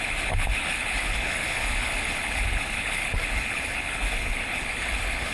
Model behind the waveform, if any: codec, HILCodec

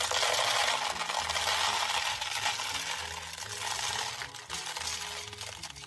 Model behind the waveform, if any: none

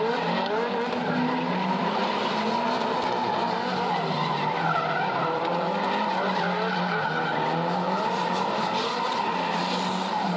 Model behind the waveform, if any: none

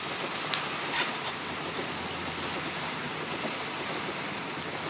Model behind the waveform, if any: none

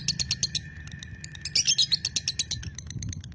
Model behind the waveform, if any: none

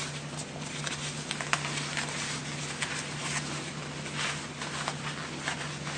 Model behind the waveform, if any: none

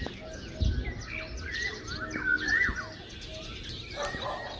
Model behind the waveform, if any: none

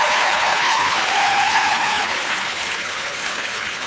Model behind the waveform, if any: codec, HILCodec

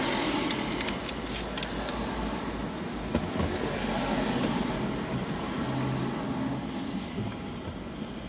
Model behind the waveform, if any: none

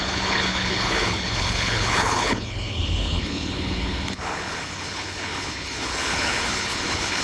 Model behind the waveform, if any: codec, HILCodec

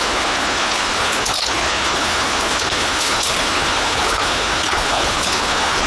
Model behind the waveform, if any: codec, HILCodec